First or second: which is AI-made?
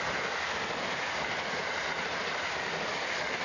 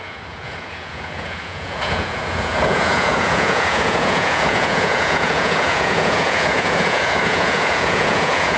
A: second